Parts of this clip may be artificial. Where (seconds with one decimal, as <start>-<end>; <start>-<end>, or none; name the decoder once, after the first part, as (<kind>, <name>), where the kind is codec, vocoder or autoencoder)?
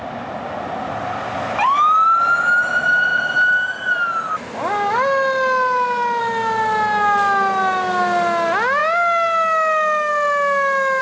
none